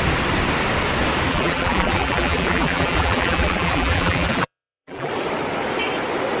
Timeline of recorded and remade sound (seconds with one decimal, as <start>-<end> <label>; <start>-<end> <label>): 0.0-1.3 recorded; 1.3-5.1 remade; 5.1-6.4 recorded